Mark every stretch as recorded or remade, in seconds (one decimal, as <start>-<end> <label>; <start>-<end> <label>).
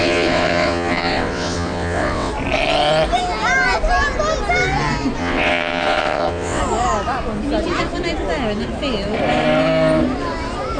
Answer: 0.0-2.3 remade; 2.3-5.2 recorded; 5.2-6.6 remade; 6.6-10.8 recorded